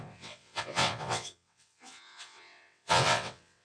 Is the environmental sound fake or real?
fake